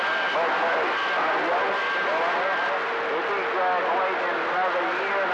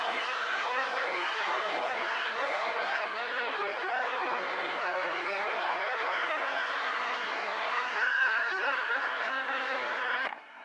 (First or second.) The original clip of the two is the first